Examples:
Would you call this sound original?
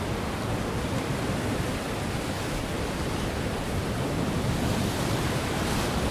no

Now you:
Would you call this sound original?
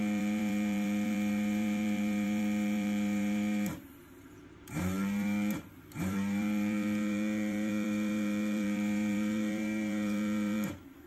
no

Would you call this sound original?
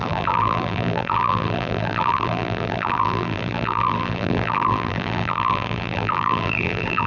no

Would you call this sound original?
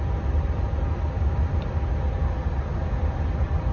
yes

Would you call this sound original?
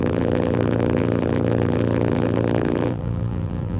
no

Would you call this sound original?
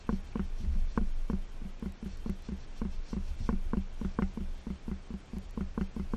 yes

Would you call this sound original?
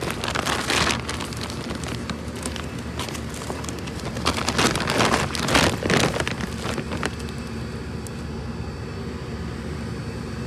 yes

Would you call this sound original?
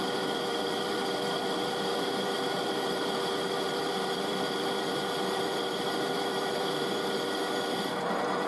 no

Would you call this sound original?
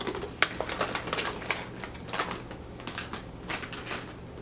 yes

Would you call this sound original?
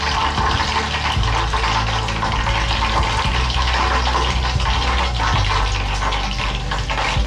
yes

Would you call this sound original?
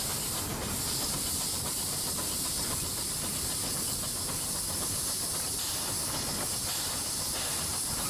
no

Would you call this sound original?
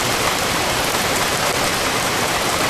no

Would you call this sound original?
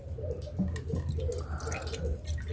yes